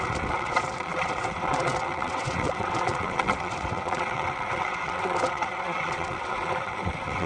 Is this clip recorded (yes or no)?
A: no